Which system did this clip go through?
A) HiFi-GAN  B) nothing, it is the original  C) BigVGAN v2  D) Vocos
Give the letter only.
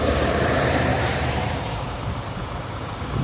C